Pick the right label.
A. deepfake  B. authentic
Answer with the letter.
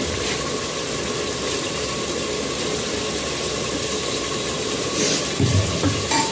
B